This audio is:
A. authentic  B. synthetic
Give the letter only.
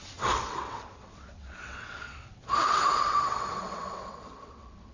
B